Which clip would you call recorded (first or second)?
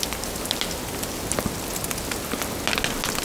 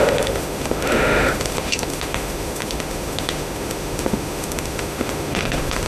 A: first